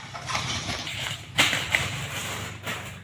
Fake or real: fake